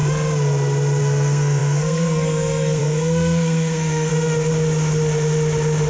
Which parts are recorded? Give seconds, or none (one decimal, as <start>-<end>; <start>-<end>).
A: 0.0-1.0; 4.1-5.9